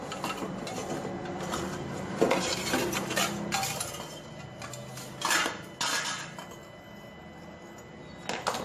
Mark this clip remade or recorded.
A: recorded